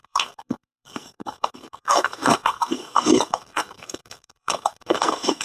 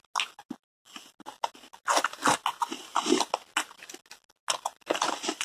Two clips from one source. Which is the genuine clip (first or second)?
second